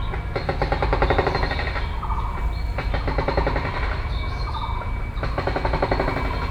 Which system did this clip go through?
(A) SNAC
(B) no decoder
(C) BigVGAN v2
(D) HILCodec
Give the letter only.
B